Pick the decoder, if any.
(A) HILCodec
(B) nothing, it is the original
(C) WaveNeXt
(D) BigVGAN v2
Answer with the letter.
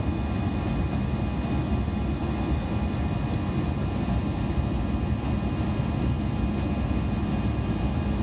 B